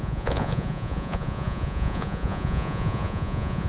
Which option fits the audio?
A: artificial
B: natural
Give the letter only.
A